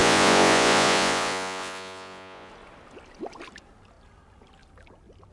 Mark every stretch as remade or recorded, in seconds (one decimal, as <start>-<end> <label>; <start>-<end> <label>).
0.0-2.5 remade; 2.5-5.3 recorded